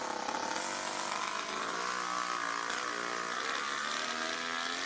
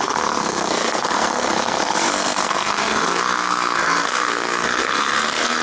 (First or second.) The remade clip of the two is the second